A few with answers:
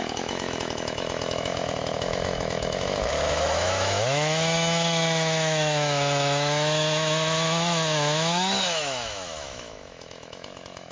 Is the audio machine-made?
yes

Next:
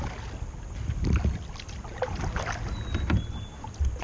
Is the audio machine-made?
no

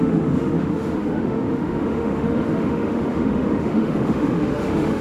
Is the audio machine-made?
yes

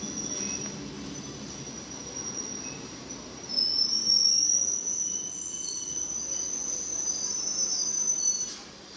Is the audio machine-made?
no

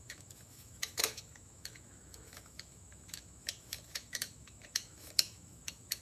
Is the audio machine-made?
yes